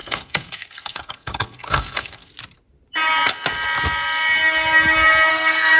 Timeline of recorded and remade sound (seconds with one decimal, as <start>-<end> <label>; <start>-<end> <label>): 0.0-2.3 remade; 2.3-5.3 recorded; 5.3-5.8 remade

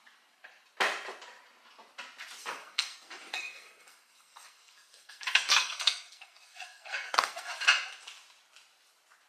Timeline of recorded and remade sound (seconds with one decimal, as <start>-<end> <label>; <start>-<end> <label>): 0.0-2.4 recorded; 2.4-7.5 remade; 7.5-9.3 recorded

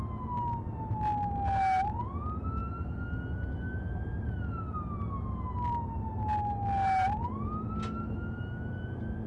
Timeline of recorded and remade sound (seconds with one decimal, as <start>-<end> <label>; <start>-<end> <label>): 0.0-9.3 recorded

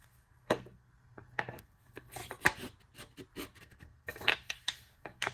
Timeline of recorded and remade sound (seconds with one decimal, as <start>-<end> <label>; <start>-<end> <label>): 0.0-2.2 remade; 2.2-3.6 recorded; 3.6-5.3 remade

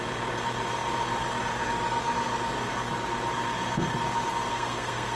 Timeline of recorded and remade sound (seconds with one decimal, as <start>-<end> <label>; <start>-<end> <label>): 0.0-4.5 recorded; 4.5-5.2 remade